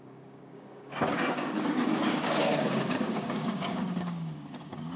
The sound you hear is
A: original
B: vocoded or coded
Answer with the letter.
B